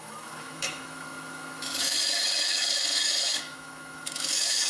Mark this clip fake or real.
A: fake